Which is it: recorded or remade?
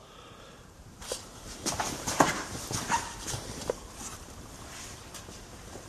remade